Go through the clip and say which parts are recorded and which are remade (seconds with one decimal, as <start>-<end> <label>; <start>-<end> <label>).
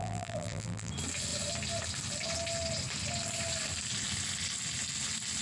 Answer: 0.0-0.9 remade; 0.9-5.4 recorded